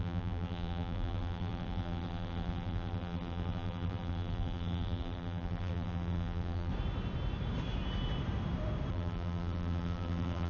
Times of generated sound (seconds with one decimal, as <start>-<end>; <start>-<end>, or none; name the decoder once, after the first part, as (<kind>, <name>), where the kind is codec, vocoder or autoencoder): 0.0-6.7 (vocoder, BigVGAN v2); 8.9-10.5